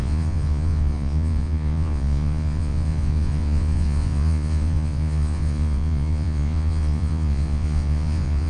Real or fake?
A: fake